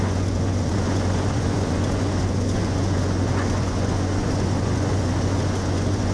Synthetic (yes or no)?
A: yes